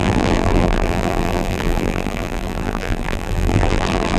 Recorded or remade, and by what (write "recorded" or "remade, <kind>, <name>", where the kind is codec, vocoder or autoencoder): remade, vocoder, BigVGAN v2